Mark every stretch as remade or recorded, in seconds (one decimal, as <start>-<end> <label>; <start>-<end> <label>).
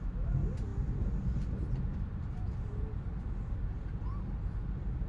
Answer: 0.0-5.1 recorded